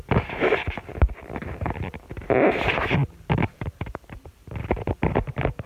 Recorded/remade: remade